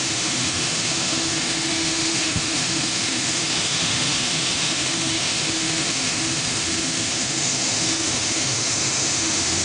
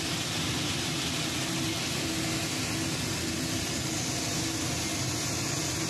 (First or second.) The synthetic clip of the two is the first